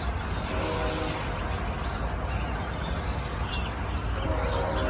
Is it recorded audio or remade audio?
recorded